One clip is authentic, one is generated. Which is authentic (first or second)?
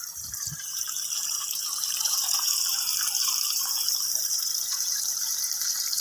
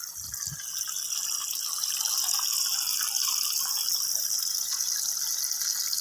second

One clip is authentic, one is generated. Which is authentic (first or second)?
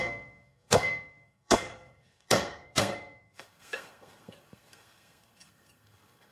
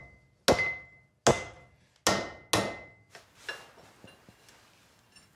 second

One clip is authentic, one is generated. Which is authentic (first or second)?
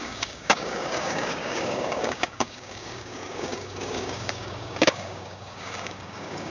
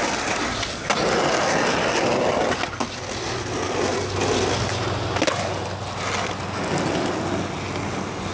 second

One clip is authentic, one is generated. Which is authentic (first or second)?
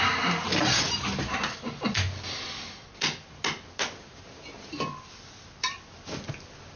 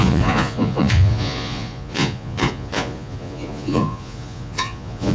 first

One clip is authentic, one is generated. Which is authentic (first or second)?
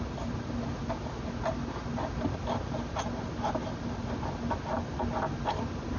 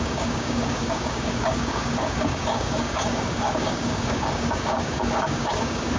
first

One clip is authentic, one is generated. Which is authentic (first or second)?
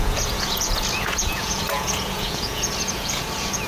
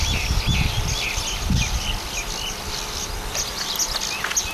second